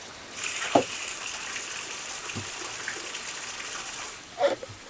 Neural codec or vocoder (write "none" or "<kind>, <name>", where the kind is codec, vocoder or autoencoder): none